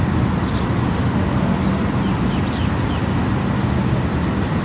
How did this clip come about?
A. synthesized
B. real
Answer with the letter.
B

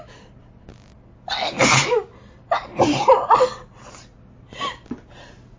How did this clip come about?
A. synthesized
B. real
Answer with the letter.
B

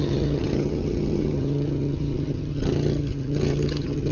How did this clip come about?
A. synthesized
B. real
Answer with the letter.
A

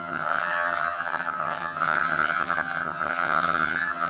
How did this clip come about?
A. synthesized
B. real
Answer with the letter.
A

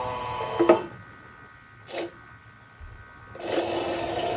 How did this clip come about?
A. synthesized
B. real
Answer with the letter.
B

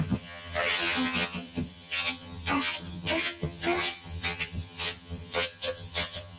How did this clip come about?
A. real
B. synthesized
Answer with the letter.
B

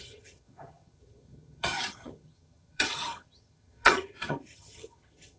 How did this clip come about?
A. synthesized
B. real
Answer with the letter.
A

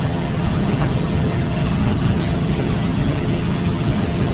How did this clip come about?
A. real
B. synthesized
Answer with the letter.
B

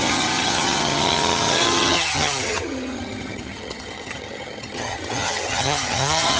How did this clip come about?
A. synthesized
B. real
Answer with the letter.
A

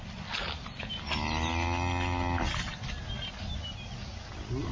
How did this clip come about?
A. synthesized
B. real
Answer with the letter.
B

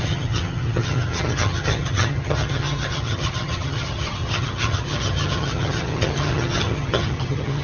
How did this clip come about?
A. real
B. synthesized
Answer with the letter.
B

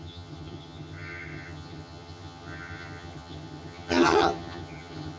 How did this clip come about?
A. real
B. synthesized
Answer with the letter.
B